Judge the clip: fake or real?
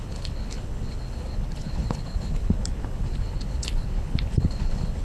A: fake